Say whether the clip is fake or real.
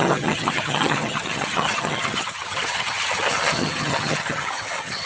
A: fake